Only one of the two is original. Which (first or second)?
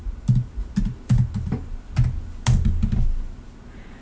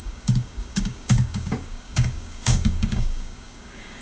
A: first